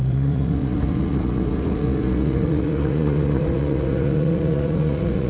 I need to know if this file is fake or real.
fake